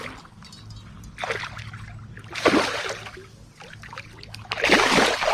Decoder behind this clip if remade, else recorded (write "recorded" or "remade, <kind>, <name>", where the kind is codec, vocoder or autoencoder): recorded